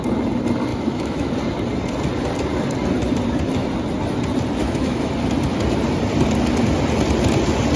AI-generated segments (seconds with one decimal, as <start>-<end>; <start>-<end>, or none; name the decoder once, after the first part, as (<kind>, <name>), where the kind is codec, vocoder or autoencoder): 0.7-1.3 (autoencoder, DAC-VAE); 4.6-5.1